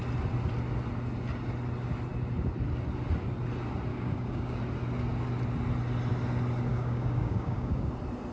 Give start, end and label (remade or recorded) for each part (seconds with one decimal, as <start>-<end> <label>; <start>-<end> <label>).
0.0-3.9 recorded; 3.9-4.6 remade; 4.6-6.7 recorded; 6.7-7.9 remade; 7.9-8.3 recorded